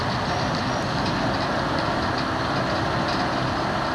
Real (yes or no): yes